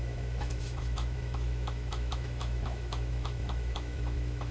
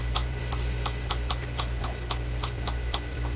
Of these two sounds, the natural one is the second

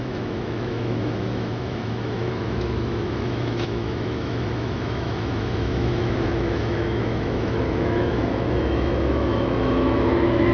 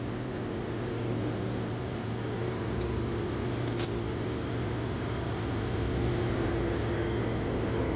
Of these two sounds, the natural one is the second